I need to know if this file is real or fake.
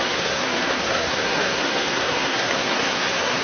fake